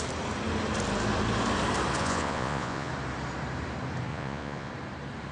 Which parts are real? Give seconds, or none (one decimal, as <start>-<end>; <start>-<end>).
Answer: 0.0-2.0; 2.9-4.1; 4.7-5.3